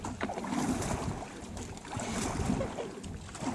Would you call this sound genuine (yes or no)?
yes